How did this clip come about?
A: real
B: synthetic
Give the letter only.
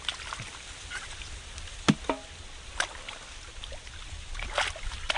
A